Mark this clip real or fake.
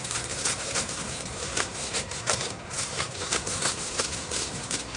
fake